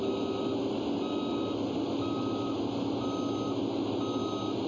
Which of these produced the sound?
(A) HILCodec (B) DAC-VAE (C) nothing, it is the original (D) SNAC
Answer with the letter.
C